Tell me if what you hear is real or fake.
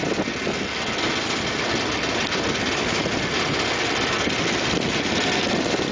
real